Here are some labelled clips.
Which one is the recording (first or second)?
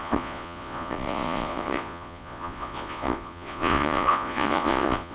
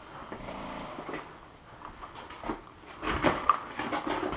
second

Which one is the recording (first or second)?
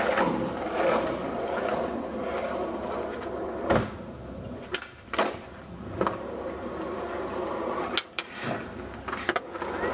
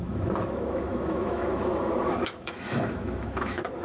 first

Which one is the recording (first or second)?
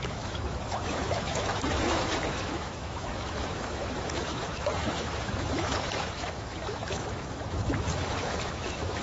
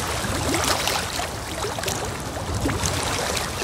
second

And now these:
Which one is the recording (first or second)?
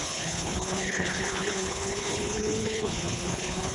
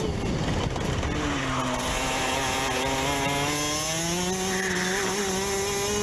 second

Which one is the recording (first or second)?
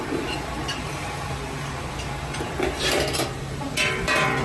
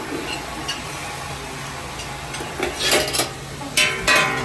second